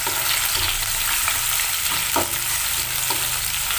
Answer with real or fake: real